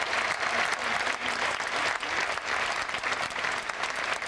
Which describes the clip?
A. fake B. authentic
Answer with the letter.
B